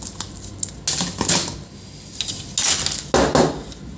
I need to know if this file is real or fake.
real